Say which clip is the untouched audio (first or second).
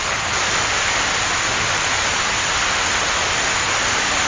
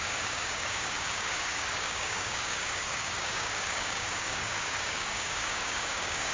first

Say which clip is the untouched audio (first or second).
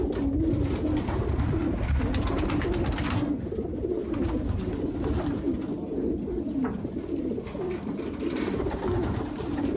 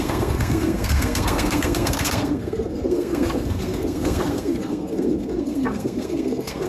first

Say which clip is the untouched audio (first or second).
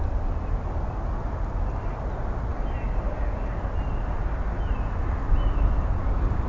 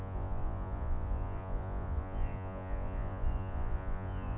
first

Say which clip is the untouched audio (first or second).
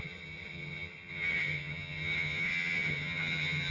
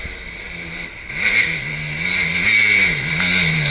second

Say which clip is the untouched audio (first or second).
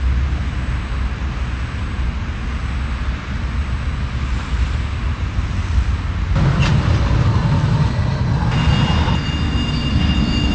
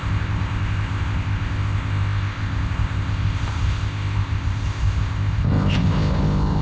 first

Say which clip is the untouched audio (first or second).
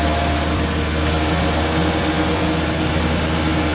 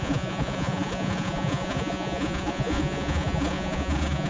first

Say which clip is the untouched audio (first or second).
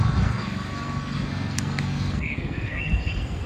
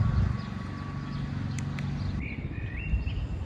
second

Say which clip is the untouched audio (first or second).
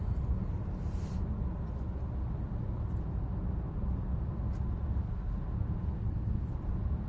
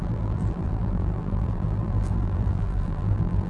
first